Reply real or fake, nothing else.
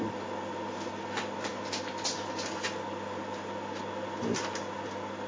real